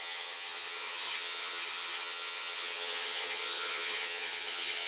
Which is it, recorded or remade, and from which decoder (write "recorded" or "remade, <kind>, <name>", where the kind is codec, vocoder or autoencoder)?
remade, vocoder, HiFi-GAN